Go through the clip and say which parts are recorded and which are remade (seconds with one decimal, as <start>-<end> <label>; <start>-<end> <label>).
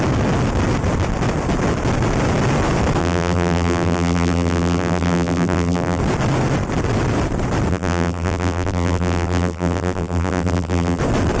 0.0-3.0 recorded; 3.0-6.0 remade; 6.0-7.7 recorded; 7.7-11.0 remade; 11.0-11.4 recorded